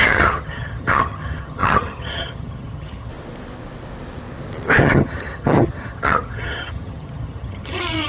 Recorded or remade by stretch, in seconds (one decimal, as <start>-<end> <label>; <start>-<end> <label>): 0.0-3.1 remade; 3.1-4.8 recorded; 4.8-8.1 remade

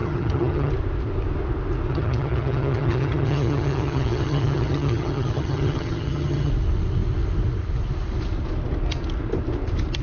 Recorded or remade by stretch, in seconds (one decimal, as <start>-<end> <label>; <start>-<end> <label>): 0.0-0.7 remade; 0.7-1.9 recorded; 1.9-6.5 remade; 6.5-10.0 recorded

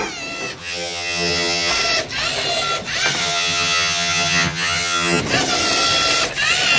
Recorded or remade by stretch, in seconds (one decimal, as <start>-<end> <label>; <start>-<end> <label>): 0.0-0.6 recorded; 0.6-1.7 remade; 1.7-3.2 recorded; 3.2-5.2 remade; 5.2-6.8 recorded

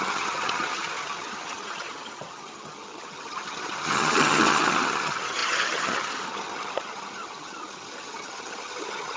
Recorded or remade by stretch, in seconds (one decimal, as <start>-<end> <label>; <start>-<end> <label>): 0.0-9.2 remade

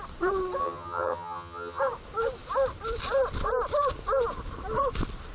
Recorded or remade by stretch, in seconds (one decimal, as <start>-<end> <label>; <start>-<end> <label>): 0.0-0.6 recorded; 0.6-1.8 remade; 1.8-5.3 recorded

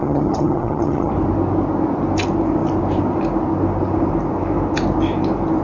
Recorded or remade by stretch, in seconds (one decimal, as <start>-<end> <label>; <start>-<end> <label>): 0.0-1.1 remade; 1.1-5.6 recorded

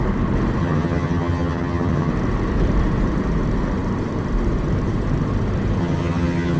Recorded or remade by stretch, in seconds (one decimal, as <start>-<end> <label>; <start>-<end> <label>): 0.0-0.6 recorded; 0.6-2.1 remade; 2.1-5.8 recorded; 5.8-6.6 remade

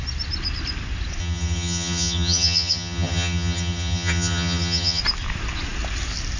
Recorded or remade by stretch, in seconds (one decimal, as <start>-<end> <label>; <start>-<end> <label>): 0.0-1.2 recorded; 1.2-5.0 remade; 5.0-6.4 recorded